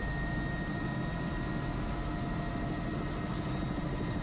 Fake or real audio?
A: real